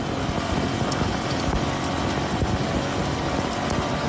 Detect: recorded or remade recorded